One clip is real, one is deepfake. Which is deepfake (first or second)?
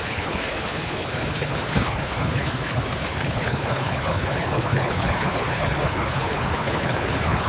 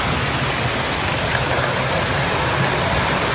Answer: first